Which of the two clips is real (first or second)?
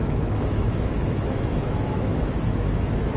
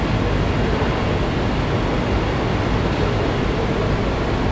second